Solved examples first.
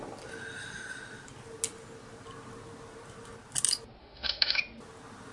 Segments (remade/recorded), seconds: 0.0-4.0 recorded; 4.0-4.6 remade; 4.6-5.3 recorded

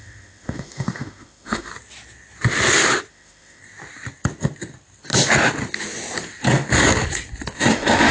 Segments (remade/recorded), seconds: 0.0-1.7 remade; 1.7-3.1 recorded; 3.1-3.6 remade; 3.6-7.6 recorded; 7.6-8.1 remade

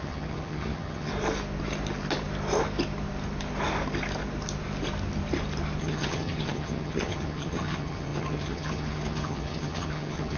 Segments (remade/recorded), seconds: 0.0-1.1 remade; 1.1-5.8 recorded; 5.8-10.4 remade

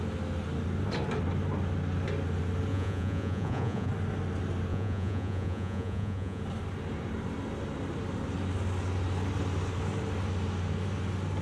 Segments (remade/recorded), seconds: 0.0-2.7 recorded; 2.7-3.9 remade; 3.9-4.7 recorded; 4.7-6.4 remade; 6.4-11.4 recorded

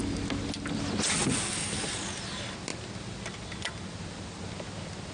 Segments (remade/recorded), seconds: 0.0-5.1 recorded

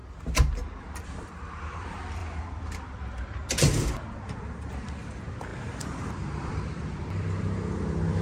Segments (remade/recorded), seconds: 0.0-0.8 recorded; 0.8-2.2 remade; 2.2-3.9 recorded; 3.9-8.2 remade